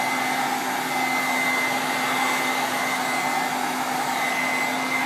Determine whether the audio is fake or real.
real